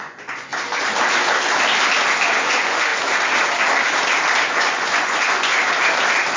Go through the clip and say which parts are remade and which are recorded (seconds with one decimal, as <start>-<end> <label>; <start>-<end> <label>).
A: 0.0-0.5 remade; 0.5-2.4 recorded; 2.4-2.9 remade; 2.9-4.5 recorded; 4.5-5.5 remade; 5.5-6.4 recorded